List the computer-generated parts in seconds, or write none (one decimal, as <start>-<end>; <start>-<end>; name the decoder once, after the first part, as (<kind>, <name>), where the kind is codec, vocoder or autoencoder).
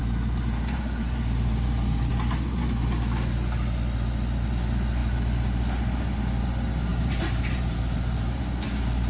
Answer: 0.0-2.1 (vocoder, BigVGAN v2); 6.9-9.1